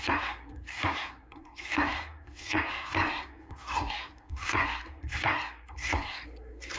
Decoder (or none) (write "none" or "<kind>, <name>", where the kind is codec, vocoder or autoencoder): codec, SNAC